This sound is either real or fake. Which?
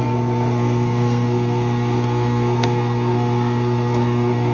fake